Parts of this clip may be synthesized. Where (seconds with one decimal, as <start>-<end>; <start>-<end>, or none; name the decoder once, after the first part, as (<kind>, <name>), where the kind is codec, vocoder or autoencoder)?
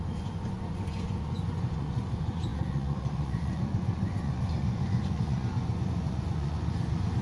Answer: 0.0-7.2 (vocoder, Vocos)